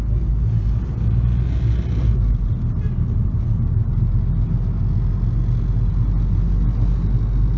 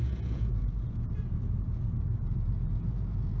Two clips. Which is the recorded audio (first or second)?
first